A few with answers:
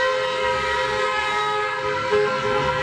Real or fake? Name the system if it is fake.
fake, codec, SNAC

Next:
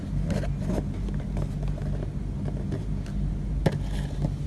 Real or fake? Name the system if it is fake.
real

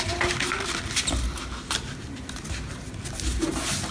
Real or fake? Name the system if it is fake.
real